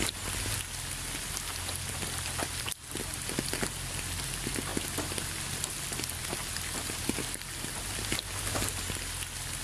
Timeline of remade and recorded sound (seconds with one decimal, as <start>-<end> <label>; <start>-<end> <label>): 0.0-9.6 recorded